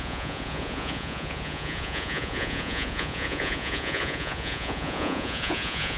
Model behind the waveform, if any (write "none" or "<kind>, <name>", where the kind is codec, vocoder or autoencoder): vocoder, Vocos